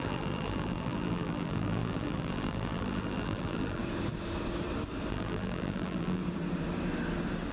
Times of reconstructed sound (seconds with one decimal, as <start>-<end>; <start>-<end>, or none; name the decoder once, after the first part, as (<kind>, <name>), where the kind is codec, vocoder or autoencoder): 0.0-3.8 (vocoder, BigVGAN v2); 5.1-6.2

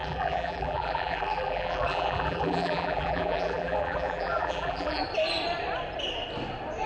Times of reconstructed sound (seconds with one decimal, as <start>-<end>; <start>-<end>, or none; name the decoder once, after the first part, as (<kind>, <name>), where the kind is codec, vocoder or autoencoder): 0.0-5.0 (vocoder, BigVGAN v2)

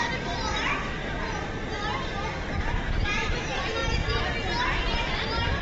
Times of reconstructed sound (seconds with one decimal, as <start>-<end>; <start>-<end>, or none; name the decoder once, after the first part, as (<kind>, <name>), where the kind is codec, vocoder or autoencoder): 0.0-3.8 (vocoder, BigVGAN v2); 5.0-5.6

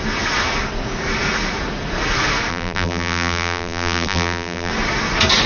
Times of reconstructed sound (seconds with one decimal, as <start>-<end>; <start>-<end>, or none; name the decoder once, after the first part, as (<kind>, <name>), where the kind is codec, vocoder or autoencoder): 2.5-4.7 (vocoder, BigVGAN v2)

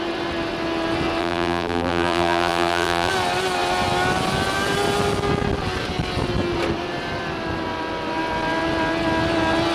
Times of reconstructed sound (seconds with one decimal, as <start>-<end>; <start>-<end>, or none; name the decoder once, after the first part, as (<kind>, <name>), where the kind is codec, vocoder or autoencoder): 1.2-3.1 (vocoder, BigVGAN v2)

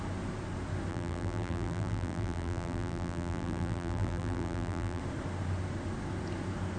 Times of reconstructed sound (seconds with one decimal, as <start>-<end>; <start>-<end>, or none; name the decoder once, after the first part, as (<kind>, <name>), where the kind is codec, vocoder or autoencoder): 0.9-5.0 (vocoder, BigVGAN v2)